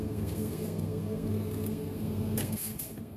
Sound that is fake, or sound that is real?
fake